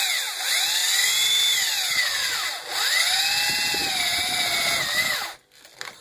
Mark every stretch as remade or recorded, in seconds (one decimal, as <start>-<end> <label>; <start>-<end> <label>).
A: 0.0-6.0 recorded